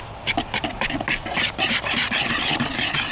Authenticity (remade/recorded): recorded